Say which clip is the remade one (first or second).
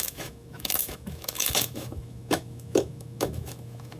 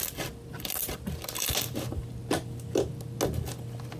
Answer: first